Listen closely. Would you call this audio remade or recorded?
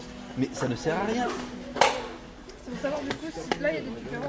recorded